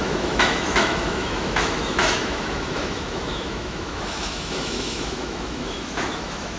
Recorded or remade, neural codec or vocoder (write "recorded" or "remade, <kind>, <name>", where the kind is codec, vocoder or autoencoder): remade, autoencoder, DAC-VAE